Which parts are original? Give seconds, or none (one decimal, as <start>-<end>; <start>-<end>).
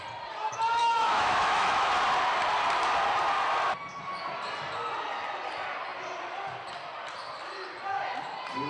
0.0-0.8; 1.9-8.7